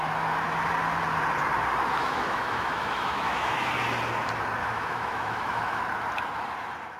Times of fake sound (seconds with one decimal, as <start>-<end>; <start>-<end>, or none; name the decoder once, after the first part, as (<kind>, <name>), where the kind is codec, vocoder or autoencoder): 2.0-3.7 (autoencoder, DAC-VAE); 4.6-5.8